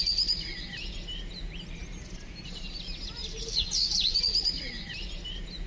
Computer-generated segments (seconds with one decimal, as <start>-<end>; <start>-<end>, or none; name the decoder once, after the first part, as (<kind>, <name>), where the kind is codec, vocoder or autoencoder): 1.8-2.7 (vocoder, BigVGAN v2)